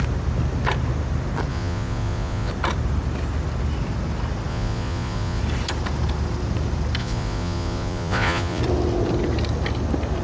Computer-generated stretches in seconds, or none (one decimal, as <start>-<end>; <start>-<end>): 1.5-2.5; 4.5-5.4; 7.0-8.6